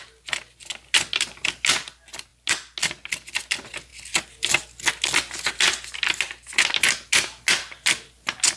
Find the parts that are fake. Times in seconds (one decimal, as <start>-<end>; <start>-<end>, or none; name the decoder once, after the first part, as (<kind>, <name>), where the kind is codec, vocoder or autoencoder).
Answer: none